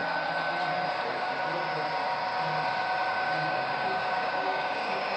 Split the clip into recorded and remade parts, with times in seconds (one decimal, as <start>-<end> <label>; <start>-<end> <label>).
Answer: 0.0-3.1 recorded; 3.1-5.2 remade